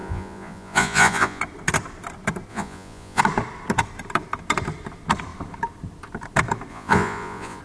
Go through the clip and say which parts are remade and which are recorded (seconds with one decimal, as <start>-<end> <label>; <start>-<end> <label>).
0.0-1.4 remade; 1.4-2.5 recorded; 2.5-3.2 remade; 3.2-6.7 recorded; 6.7-7.6 remade